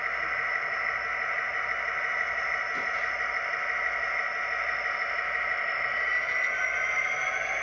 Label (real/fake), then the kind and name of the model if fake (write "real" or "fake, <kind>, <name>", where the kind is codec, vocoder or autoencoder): real